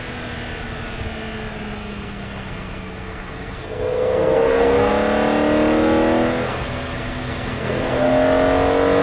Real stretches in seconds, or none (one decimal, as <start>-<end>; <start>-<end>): 0.0-1.8; 4.9-6.5; 8.1-9.0